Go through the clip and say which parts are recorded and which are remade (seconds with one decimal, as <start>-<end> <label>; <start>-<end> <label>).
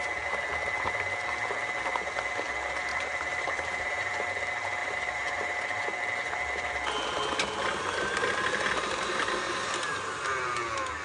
0.0-2.9 recorded; 2.9-4.1 remade; 4.1-4.8 recorded; 4.8-5.8 remade; 5.8-11.0 recorded